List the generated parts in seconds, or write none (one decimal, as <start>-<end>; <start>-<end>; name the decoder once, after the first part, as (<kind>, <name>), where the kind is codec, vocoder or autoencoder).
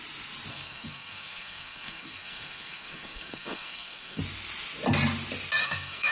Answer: 0.5-4.2 (codec, SNAC); 5.6-6.1